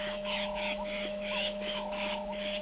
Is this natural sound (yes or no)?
no